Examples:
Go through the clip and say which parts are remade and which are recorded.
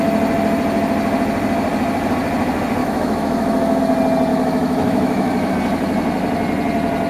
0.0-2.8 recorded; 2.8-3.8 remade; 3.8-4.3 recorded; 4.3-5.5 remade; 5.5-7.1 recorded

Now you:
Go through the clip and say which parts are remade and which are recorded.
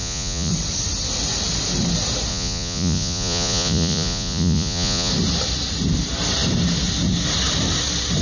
0.0-0.5 remade; 0.5-2.3 recorded; 2.3-5.1 remade; 5.1-8.2 recorded